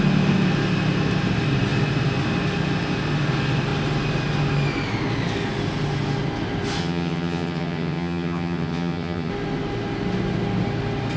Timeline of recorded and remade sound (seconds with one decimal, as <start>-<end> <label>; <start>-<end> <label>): 0.0-6.8 recorded; 6.8-9.3 remade; 9.3-11.2 recorded